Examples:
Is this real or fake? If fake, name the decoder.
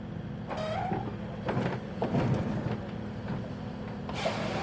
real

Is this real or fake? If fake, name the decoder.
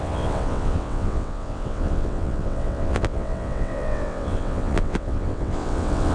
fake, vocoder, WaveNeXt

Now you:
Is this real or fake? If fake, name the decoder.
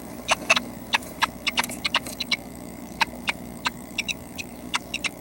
fake, codec, DAC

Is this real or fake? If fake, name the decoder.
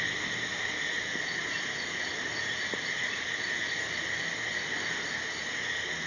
real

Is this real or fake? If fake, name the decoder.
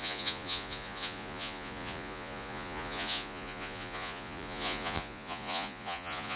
fake, vocoder, Vocos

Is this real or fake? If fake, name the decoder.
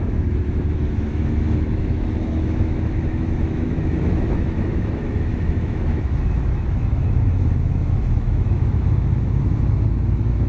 fake, autoencoder, DAC-VAE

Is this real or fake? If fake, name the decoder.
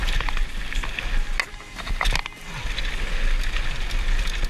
real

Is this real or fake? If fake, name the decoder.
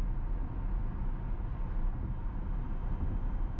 real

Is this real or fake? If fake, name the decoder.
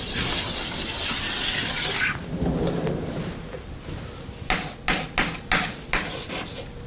real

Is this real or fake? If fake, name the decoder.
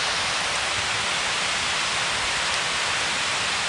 real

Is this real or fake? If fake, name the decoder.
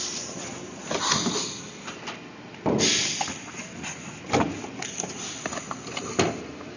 real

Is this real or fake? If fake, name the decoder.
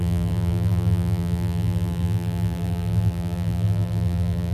fake, vocoder, BigVGAN v2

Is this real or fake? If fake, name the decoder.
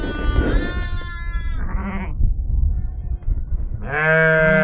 real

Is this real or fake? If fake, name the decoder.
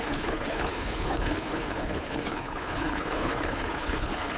fake, codec, HILCodec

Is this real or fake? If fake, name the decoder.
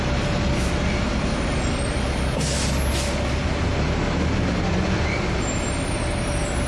real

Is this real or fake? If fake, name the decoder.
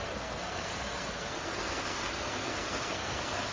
fake, codec, SNAC